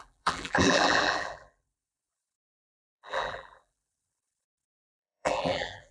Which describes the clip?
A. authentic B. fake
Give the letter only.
B